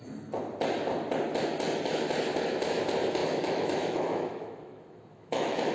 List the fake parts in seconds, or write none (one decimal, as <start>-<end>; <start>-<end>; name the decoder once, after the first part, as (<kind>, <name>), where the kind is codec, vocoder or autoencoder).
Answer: 3.2-5.7 (autoencoder, DAC-VAE)